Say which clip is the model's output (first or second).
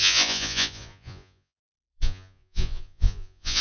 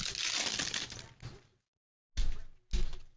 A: first